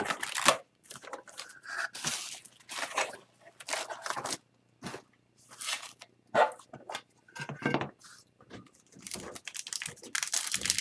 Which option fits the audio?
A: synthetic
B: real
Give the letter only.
B